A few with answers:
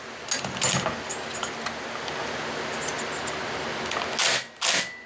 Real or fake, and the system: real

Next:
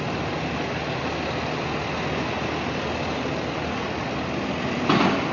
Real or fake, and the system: real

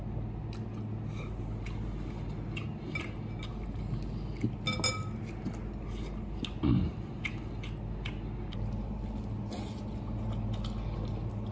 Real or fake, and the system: real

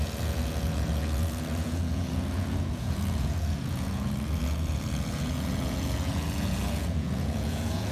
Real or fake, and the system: fake, vocoder, Vocos